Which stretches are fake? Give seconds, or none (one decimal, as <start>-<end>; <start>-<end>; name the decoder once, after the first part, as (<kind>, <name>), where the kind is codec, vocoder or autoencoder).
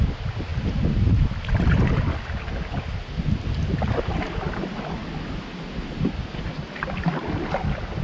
none